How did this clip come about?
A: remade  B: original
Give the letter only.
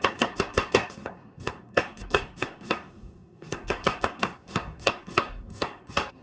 A